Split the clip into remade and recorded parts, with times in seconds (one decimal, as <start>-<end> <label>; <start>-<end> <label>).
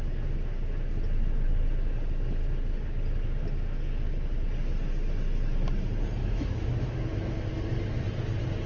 0.0-6.2 recorded; 6.2-7.5 remade; 7.5-8.7 recorded